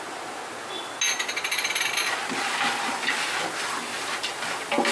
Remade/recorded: recorded